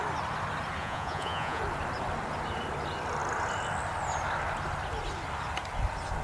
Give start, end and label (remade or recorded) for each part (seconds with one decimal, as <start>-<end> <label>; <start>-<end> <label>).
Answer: 0.0-0.8 recorded; 0.8-1.6 remade; 1.6-6.2 recorded